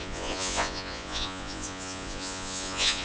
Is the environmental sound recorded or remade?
remade